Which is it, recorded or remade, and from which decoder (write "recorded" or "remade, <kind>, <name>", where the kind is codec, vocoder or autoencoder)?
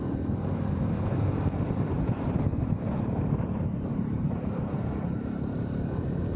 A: remade, vocoder, BigVGAN v2